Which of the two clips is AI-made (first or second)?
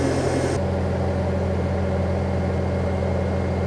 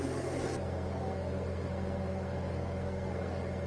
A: second